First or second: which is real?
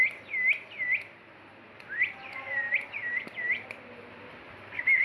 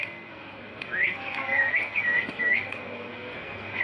first